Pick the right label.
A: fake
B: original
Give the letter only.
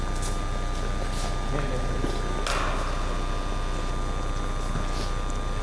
B